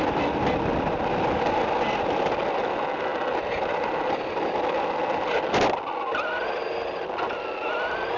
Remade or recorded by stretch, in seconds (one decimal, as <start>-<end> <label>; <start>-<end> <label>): 0.0-8.2 recorded